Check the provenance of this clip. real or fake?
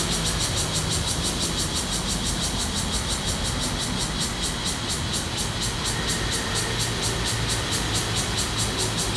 real